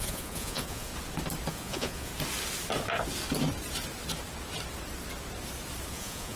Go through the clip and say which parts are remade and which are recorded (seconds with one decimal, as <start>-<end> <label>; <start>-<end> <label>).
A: 0.0-0.9 remade; 0.9-1.5 recorded; 1.5-2.1 remade; 2.1-5.9 recorded; 5.9-6.4 remade